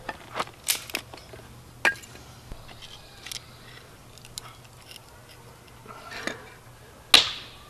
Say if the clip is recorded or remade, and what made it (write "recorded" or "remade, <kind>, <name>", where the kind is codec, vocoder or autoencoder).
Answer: recorded